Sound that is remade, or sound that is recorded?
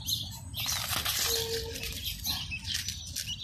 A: recorded